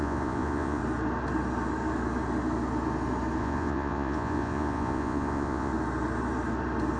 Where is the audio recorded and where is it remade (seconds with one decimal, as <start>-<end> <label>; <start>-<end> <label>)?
0.0-0.8 remade; 0.8-3.4 recorded; 3.4-5.7 remade; 5.7-7.0 recorded